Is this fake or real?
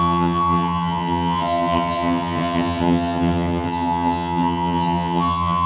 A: fake